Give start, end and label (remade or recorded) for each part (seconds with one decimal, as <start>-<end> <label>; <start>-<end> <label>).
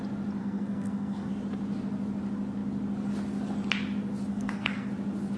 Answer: 0.0-0.4 recorded; 0.4-1.3 remade; 1.3-4.3 recorded; 4.3-4.9 remade; 4.9-5.4 recorded